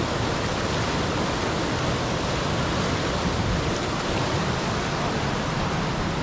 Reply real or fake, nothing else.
real